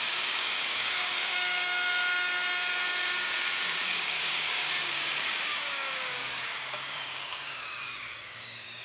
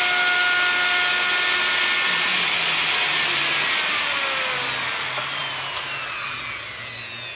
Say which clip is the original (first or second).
second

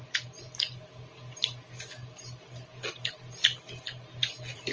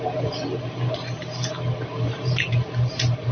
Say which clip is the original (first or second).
first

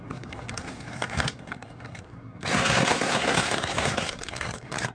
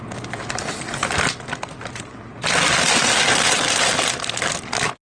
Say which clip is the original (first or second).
second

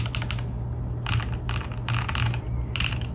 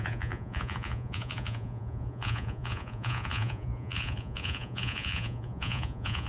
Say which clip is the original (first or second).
first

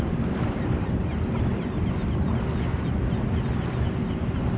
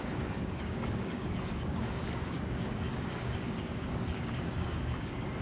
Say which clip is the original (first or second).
first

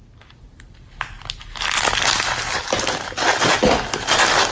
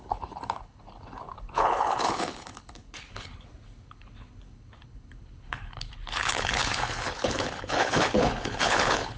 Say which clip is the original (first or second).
first